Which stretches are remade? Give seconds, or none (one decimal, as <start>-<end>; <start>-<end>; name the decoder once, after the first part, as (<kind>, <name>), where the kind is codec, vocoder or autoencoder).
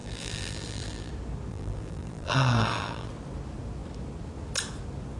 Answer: 0.0-1.1 (vocoder, BigVGAN v2); 1.5-3.1